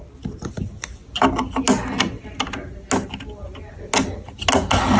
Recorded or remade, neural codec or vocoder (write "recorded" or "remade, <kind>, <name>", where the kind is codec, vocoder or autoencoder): recorded